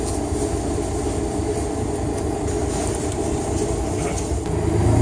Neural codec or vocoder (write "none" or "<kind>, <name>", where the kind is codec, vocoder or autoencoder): none